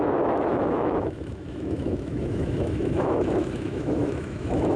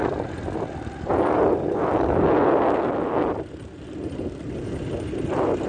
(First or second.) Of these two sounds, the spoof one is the first